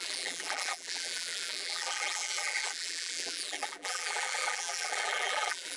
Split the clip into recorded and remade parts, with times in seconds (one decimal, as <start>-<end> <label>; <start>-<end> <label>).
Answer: 0.0-5.8 remade